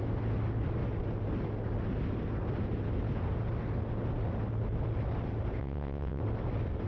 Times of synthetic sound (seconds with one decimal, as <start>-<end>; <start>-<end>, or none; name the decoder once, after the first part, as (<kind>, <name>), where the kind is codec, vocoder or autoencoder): 5.6-6.2 (vocoder, WaveNeXt)